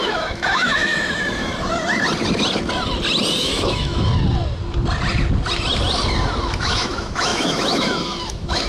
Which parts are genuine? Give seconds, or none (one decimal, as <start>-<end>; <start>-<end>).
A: 1.5-3.4; 4.1-6.4